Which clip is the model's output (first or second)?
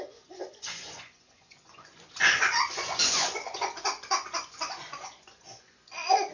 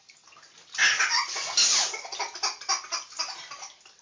first